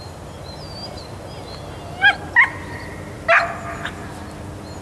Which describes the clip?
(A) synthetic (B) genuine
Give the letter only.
B